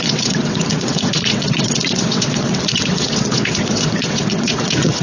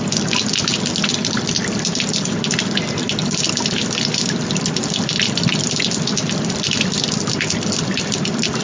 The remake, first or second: first